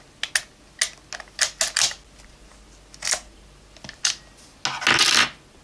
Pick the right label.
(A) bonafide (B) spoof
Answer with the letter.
A